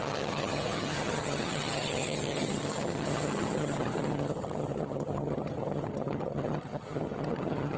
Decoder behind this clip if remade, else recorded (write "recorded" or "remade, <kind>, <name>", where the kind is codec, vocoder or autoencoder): remade, vocoder, HiFi-GAN